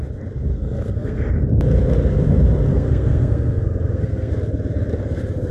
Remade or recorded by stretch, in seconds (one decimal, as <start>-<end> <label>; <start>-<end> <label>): 0.0-0.5 recorded; 0.5-1.3 remade; 1.3-2.7 recorded; 2.7-4.3 remade; 4.3-5.5 recorded